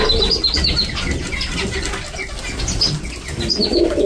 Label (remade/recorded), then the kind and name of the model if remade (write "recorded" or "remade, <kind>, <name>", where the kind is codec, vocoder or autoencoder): recorded